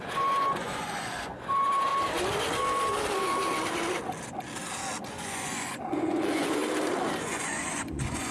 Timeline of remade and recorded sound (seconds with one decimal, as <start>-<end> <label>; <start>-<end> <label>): 0.0-1.9 remade; 1.9-5.1 recorded; 5.1-6.6 remade; 6.6-7.2 recorded; 7.2-8.3 remade